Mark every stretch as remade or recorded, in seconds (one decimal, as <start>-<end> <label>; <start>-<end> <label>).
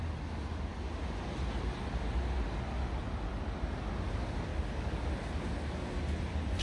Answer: 0.0-4.5 recorded; 4.5-5.0 remade; 5.0-6.6 recorded